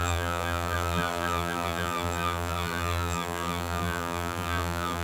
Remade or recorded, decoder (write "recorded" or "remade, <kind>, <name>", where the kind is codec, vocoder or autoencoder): remade, vocoder, BigVGAN v2